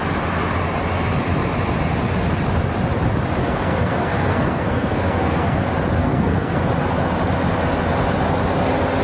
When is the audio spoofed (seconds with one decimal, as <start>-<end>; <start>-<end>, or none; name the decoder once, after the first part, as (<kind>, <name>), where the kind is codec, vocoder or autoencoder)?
3.4-5.6 (codec, SNAC); 6.0-6.6